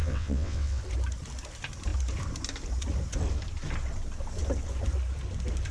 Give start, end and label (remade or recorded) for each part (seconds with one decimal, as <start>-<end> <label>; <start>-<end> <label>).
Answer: 0.0-0.8 remade; 0.8-5.7 recorded